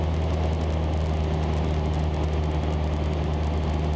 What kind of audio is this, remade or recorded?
recorded